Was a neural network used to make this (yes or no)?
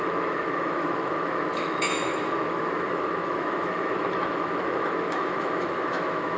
yes